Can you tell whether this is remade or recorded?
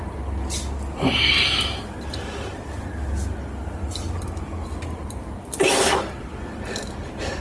recorded